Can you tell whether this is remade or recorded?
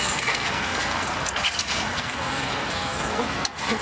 remade